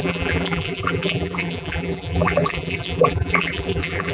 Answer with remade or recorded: remade